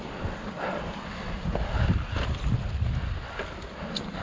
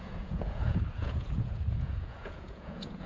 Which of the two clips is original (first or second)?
first